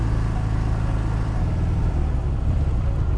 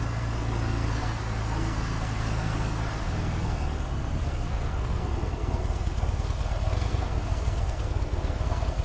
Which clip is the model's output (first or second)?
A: second